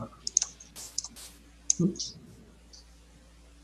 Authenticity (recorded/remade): recorded